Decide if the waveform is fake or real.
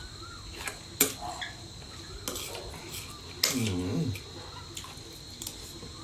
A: real